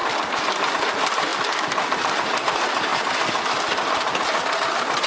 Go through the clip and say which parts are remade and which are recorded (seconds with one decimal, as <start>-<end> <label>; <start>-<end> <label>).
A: 0.0-5.1 recorded